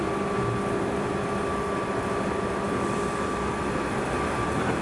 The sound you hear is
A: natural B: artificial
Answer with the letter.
A